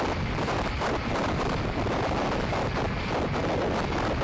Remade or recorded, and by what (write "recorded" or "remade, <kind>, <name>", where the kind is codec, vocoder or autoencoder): recorded